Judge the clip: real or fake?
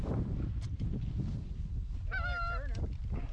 real